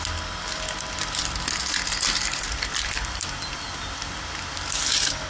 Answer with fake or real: real